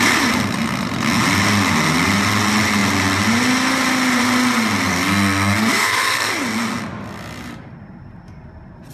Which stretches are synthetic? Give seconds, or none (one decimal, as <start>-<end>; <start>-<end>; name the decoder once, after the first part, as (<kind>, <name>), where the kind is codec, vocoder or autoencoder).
4.9-6.3 (codec, SNAC)